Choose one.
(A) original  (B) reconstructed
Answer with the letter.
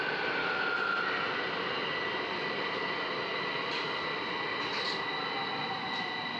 A